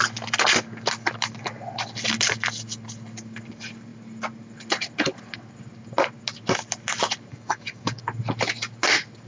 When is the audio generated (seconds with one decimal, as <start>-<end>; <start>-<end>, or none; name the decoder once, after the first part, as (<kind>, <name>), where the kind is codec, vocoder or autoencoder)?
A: 7.3-8.0 (codec, DAC)